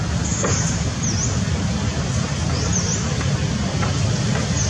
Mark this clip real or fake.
real